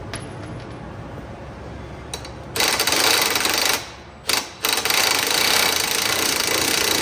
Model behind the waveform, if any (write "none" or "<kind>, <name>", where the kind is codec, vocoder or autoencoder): none